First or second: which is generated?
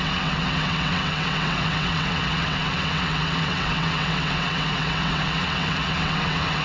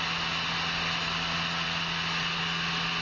first